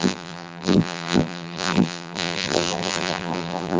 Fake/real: fake